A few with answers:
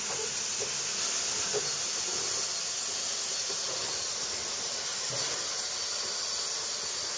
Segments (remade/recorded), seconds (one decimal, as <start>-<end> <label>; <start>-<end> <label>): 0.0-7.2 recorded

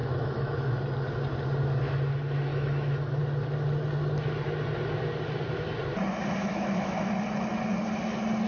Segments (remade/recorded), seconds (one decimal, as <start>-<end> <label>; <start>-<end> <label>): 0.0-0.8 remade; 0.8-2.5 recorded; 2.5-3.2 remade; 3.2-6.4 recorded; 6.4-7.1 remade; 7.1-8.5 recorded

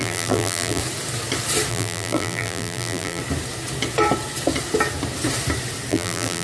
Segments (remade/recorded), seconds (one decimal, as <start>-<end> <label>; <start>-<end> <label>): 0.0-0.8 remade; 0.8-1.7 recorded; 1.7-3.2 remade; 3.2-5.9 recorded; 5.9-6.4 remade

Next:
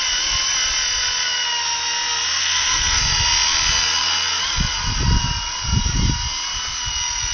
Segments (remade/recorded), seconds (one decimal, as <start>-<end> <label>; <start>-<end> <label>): 0.0-2.4 recorded; 2.4-3.0 remade; 3.0-7.3 recorded